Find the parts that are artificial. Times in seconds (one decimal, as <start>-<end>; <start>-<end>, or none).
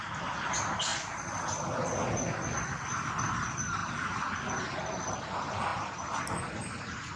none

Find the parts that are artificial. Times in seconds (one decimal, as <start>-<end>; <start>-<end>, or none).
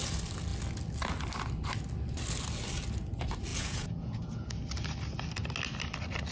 3.5-4.5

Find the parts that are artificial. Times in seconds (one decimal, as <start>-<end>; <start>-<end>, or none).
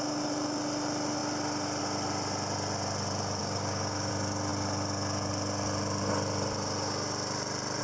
3.4-4.1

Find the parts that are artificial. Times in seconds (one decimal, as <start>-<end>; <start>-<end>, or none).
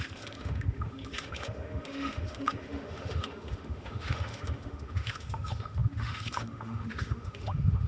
0.0-7.9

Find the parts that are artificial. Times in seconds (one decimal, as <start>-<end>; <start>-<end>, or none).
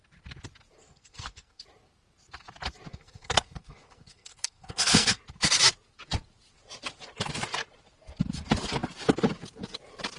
0.8-1.6; 2.9-5.2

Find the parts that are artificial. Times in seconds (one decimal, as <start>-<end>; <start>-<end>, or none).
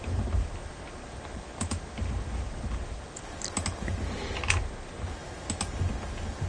none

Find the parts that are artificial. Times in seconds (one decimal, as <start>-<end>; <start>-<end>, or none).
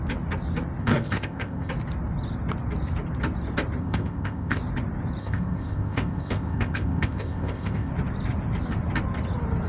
0.8-1.7; 3.8-4.6; 5.2-7.9